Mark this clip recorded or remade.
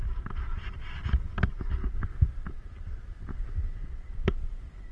recorded